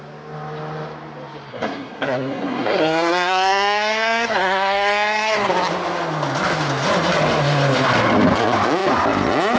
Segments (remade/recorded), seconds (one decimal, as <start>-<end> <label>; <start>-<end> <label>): 0.0-1.5 recorded; 1.5-5.5 remade; 5.5-9.6 recorded